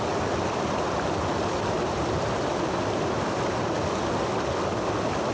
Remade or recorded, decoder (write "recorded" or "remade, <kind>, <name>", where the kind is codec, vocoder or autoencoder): recorded